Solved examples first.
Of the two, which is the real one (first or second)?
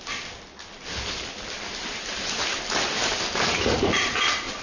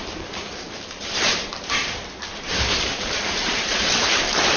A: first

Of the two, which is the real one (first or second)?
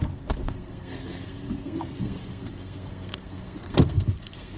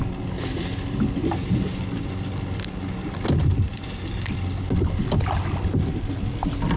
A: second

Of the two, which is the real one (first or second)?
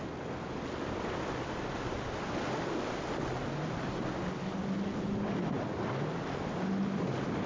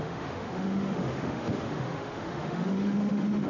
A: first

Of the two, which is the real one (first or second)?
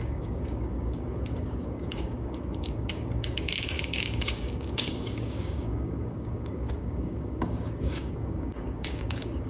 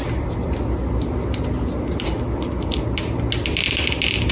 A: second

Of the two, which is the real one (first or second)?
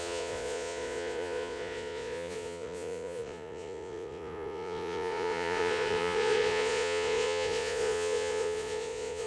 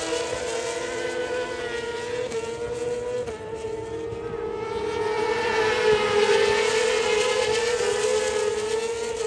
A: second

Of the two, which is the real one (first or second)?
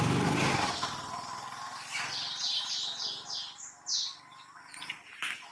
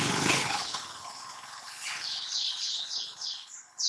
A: first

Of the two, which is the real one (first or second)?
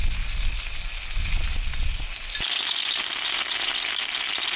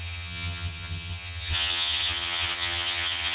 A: first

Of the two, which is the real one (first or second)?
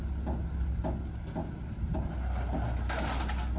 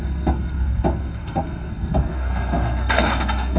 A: first